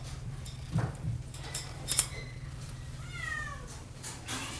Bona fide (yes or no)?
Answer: no